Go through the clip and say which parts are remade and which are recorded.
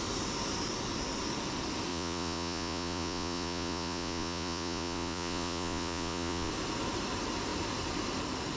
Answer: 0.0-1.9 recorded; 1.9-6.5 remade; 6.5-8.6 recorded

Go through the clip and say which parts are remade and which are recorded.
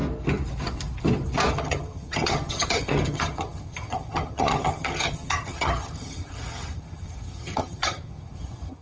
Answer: 0.0-1.5 recorded; 1.5-8.8 remade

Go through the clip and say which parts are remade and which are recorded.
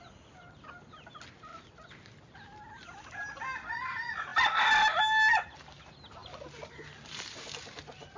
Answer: 0.0-8.2 recorded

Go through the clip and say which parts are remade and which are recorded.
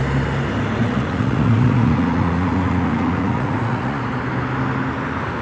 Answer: 0.0-0.8 recorded; 0.8-4.0 remade; 4.0-5.4 recorded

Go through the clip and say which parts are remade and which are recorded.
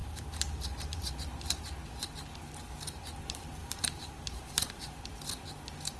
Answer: 0.0-1.1 remade; 1.1-3.6 recorded; 3.6-5.0 remade; 5.0-6.0 recorded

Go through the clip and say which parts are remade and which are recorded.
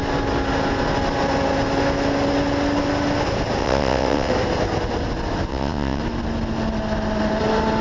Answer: 0.0-3.6 recorded; 3.6-4.3 remade; 4.3-5.5 recorded; 5.5-6.0 remade; 6.0-7.8 recorded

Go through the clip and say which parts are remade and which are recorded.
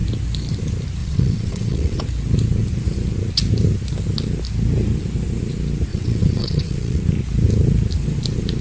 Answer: 0.0-1.0 recorded; 1.0-2.0 remade; 2.0-5.9 recorded; 5.9-7.0 remade; 7.0-8.6 recorded